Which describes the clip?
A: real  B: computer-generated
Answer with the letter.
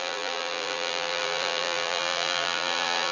B